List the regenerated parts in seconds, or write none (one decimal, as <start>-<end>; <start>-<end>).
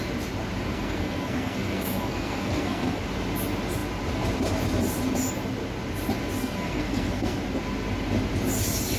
0.7-3.0; 6.4-7.4